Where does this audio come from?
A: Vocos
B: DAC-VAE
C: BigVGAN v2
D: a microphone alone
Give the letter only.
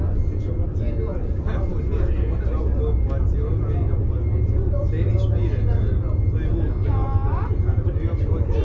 D